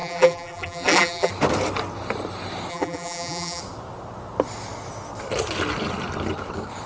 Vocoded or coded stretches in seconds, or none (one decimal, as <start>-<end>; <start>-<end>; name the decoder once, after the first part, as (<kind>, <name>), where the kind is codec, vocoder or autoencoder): 0.0-1.3 (vocoder, BigVGAN v2); 2.7-3.6